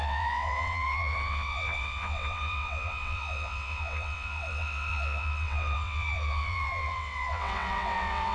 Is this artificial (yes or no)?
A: yes